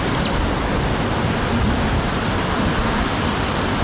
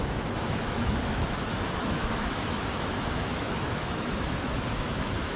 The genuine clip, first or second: first